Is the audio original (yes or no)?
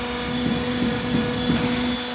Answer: yes